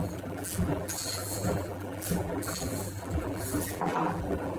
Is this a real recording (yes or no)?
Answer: no